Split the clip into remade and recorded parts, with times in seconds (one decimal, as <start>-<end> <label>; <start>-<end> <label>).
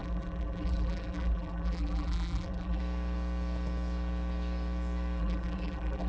0.0-2.8 remade; 2.8-5.2 recorded; 5.2-6.1 remade